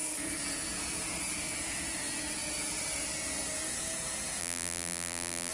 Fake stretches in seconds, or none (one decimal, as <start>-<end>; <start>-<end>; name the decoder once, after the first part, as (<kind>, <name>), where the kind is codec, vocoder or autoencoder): 4.4-5.5 (vocoder, BigVGAN v2)